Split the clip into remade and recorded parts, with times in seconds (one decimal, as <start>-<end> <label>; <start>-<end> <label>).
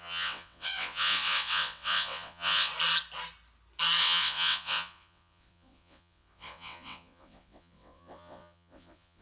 0.0-2.7 remade; 2.7-4.0 recorded; 4.0-9.2 remade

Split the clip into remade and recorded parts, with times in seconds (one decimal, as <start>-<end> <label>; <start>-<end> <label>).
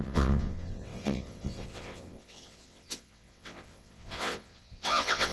0.0-5.3 remade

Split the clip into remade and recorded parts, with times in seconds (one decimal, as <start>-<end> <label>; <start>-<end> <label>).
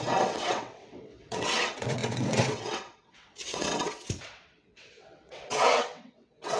0.0-6.6 remade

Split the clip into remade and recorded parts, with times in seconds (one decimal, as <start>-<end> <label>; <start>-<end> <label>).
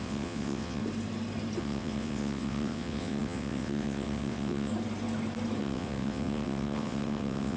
0.0-0.8 remade; 0.8-1.6 recorded; 1.6-4.7 remade; 4.7-5.6 recorded; 5.6-7.6 remade